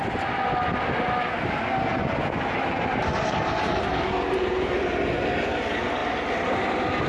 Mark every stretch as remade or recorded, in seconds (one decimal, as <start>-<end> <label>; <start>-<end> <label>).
0.0-7.1 recorded